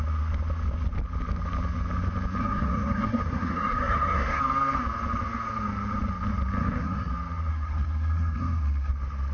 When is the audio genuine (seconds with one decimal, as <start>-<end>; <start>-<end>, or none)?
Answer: 0.0-2.4; 4.4-6.6; 7.1-7.5; 8.9-9.3

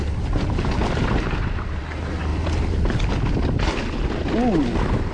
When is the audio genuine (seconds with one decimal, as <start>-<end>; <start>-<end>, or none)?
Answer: 0.0-0.8; 1.8-2.3; 3.1-5.1